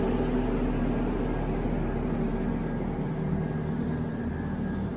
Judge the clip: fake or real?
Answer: real